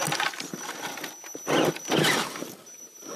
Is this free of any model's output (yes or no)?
yes